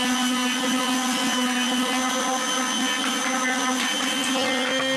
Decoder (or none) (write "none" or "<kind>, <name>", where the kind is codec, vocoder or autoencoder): none